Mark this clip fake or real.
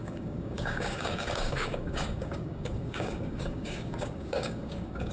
fake